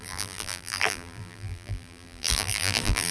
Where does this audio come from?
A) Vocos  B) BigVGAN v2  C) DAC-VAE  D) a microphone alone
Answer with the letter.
B